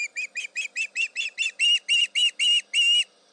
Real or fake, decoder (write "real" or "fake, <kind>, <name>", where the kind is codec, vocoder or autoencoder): real